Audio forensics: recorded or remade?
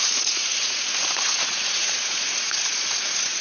remade